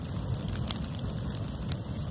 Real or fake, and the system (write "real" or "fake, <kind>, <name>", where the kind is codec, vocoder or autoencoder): real